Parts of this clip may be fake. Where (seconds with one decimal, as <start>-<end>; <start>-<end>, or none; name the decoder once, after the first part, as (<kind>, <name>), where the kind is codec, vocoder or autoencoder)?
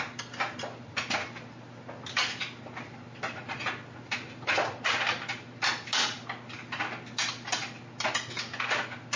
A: none